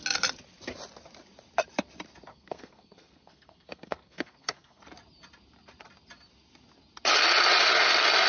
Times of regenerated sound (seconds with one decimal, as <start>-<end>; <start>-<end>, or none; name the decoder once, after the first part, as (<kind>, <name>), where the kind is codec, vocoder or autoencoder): 2.3-4.8 (codec, SNAC)